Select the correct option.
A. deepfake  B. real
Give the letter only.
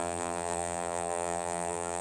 A